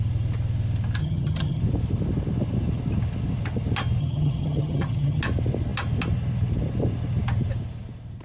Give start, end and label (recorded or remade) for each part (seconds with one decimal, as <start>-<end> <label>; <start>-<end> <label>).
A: 0.0-1.0 recorded; 1.0-1.6 remade; 1.6-4.0 recorded; 4.0-5.2 remade; 5.2-8.2 recorded